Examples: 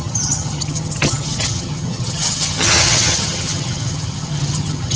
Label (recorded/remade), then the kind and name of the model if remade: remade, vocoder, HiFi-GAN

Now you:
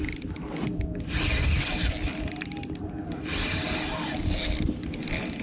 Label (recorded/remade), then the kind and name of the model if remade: recorded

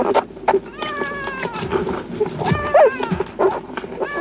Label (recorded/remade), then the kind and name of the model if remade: recorded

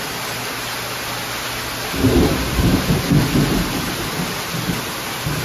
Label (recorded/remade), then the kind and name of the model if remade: recorded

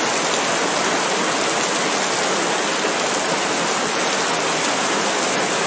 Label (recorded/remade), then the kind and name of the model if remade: recorded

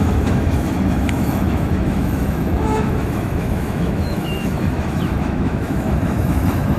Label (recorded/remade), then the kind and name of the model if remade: remade, autoencoder, DAC-VAE